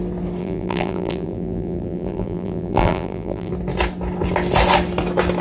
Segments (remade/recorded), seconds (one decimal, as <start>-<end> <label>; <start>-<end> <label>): 0.0-0.4 recorded; 0.4-3.5 remade; 3.5-5.4 recorded